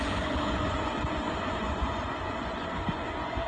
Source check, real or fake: fake